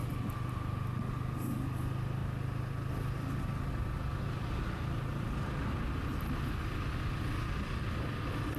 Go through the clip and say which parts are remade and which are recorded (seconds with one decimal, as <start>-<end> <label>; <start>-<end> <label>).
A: 0.0-8.6 recorded